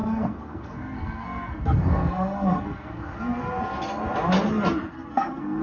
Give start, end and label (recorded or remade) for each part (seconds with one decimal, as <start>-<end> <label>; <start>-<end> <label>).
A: 0.0-3.2 remade; 3.2-4.9 recorded; 4.9-5.6 remade